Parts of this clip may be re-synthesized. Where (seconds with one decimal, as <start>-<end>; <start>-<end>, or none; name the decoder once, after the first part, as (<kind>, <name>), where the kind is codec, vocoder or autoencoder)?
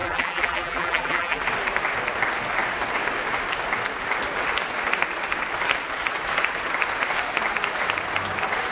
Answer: 0.0-1.4 (vocoder, BigVGAN v2)